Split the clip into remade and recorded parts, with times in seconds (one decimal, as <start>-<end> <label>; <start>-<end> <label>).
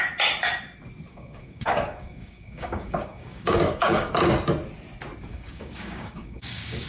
0.0-1.1 recorded; 1.1-4.1 remade; 4.1-5.3 recorded; 5.3-6.9 remade